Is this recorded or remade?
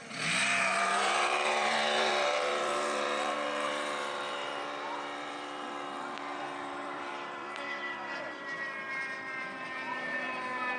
remade